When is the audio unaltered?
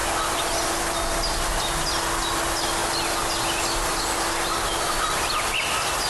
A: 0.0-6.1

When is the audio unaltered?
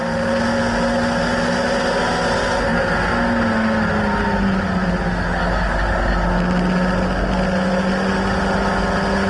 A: 0.0-9.3